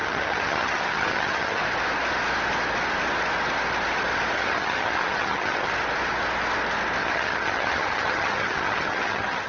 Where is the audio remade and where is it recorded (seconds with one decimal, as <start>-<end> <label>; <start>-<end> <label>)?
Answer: 0.0-1.6 remade; 1.6-4.4 recorded; 4.4-5.7 remade; 5.7-7.0 recorded; 7.0-9.5 remade